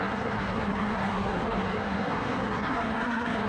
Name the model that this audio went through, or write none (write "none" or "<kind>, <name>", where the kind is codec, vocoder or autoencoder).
codec, SNAC